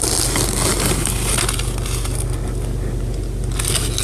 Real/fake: real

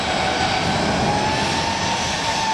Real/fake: real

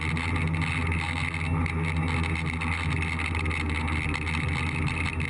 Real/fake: real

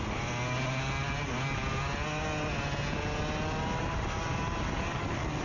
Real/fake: real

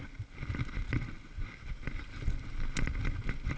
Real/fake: real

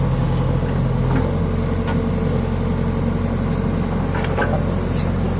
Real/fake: real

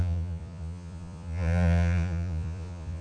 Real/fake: fake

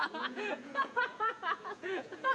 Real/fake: fake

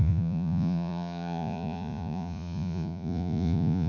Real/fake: fake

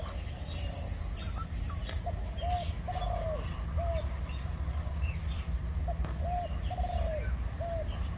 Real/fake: real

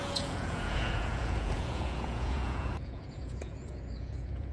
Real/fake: fake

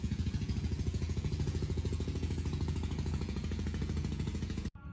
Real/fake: fake